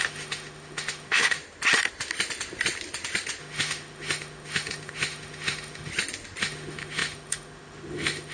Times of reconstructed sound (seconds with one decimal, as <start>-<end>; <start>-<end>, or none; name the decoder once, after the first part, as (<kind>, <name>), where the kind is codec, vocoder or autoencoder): 0.0-1.4 (autoencoder, DAC-VAE); 3.4-5.9; 6.4-8.3